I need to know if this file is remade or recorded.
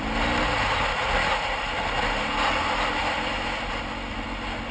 recorded